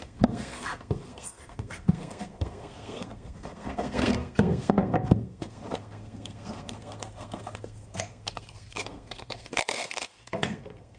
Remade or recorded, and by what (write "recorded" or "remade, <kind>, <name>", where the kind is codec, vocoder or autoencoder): remade, codec, SNAC